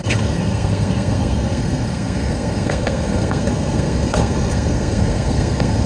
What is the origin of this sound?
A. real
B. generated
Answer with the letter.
B